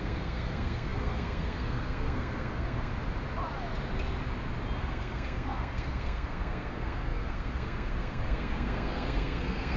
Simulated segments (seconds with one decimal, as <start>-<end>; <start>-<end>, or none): 0.0-2.9; 4.8-9.8